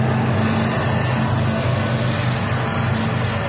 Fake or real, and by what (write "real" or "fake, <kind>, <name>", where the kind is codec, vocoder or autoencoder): real